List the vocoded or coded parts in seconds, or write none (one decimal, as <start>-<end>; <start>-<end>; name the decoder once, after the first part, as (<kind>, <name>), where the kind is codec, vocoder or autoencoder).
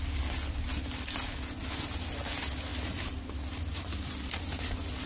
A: none